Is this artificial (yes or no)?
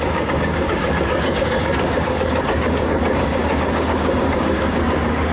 yes